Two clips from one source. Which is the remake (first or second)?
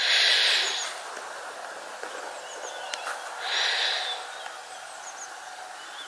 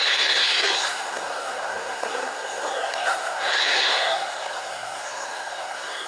second